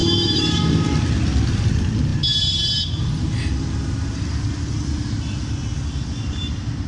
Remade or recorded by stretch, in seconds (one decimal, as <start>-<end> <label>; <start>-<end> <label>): 0.0-0.6 remade; 0.6-6.9 recorded